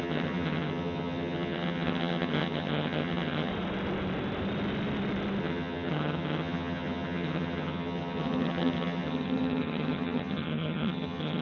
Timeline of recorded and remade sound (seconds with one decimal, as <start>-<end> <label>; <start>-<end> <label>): 0.0-3.5 remade; 3.5-5.4 recorded; 5.4-11.4 remade